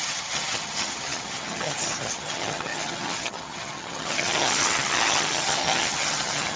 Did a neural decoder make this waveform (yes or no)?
yes